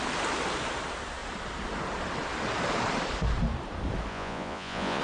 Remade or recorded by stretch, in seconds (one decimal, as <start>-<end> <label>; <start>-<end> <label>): 0.0-4.1 recorded; 4.1-5.0 remade